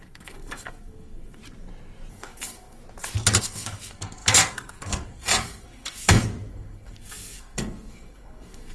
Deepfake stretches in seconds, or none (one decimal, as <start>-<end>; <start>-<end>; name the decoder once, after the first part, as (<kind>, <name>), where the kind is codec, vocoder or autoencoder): 0.0-1.4 (codec, SNAC); 2.1-2.8; 3.4-8.7